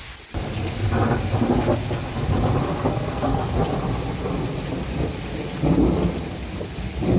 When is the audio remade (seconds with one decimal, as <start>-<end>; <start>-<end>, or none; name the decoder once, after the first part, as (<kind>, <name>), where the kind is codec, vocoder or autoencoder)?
2.7-3.5 (codec, SNAC)